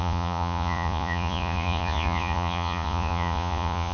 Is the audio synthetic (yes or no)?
yes